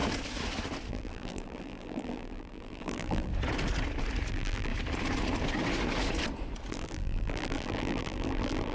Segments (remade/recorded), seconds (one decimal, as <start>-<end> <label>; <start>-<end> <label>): 0.0-0.9 recorded; 0.9-3.3 remade; 3.3-4.3 recorded; 4.3-4.7 remade; 4.7-6.7 recorded; 6.7-8.7 remade